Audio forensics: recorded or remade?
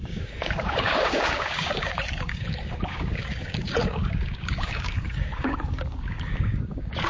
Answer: remade